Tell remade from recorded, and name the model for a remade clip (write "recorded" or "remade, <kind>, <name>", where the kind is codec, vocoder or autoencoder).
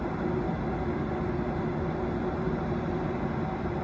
recorded